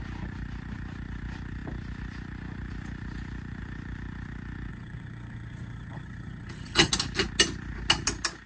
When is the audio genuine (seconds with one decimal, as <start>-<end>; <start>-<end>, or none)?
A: 0.0-4.7; 6.9-8.5